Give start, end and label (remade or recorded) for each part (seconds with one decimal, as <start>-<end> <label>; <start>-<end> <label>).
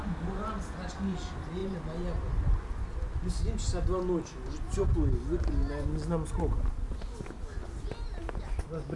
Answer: 0.0-9.0 recorded